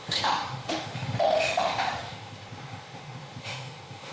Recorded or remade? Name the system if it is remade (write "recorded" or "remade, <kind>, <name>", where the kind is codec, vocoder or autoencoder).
remade, autoencoder, DAC-VAE